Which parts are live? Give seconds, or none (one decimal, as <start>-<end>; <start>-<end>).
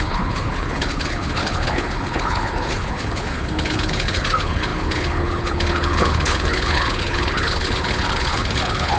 none